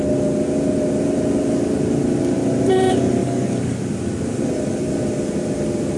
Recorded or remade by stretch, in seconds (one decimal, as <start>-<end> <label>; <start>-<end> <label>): 0.0-3.2 recorded; 3.2-3.8 remade; 3.8-6.0 recorded